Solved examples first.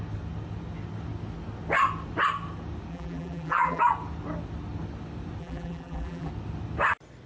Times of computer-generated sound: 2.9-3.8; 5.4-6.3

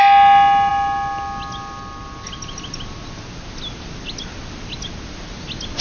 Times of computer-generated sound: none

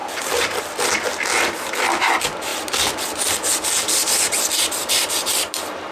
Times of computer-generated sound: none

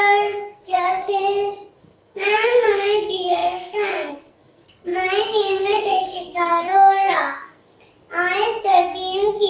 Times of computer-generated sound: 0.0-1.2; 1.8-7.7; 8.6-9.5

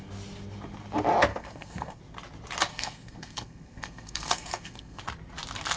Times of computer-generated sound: 1.3-2.0; 2.7-5.0